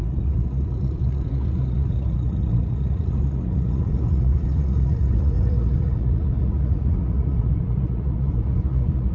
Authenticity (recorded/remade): remade